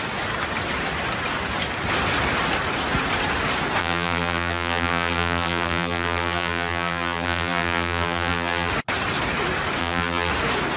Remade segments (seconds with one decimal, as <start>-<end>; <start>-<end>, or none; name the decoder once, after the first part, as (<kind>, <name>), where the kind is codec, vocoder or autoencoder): 3.8-8.7 (vocoder, BigVGAN v2); 9.8-10.3